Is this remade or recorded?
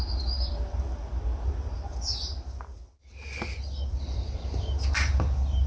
recorded